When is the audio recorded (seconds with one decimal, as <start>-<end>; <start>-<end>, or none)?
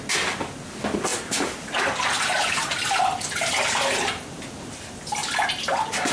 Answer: 0.0-6.1